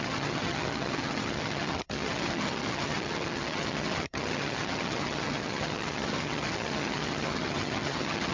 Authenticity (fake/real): fake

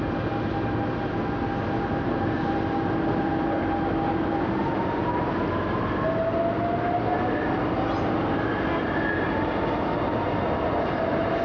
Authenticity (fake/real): real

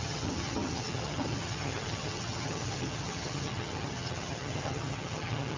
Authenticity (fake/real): fake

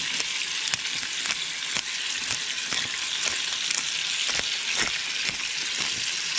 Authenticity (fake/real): real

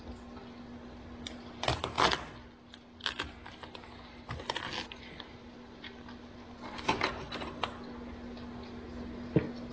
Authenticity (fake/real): real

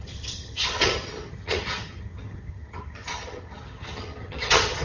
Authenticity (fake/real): fake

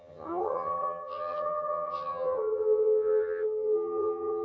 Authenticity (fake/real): fake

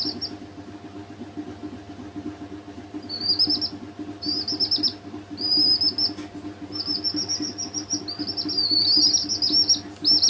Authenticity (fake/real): real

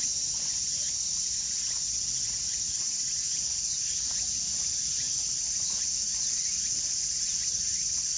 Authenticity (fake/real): real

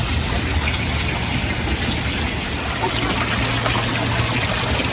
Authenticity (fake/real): real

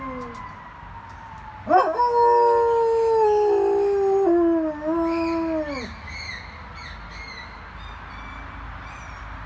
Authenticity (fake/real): real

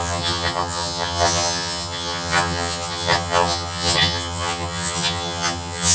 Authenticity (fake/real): fake